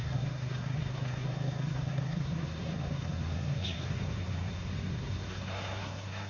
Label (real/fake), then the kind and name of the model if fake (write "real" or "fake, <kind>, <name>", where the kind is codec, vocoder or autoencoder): fake, codec, SNAC